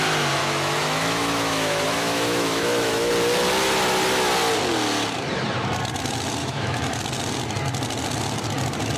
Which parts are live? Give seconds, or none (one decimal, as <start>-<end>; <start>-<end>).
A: 0.0-0.4; 3.1-6.4; 7.0-9.0